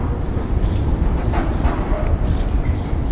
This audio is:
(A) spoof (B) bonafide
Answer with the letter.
B